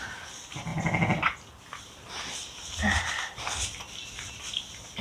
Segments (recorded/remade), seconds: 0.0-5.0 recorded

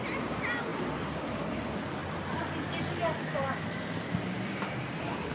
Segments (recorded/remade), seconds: 0.0-5.3 recorded